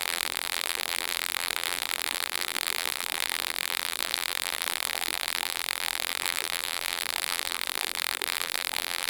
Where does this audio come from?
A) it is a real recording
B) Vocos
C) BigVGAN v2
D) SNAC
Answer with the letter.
C